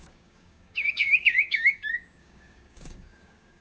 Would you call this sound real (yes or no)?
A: no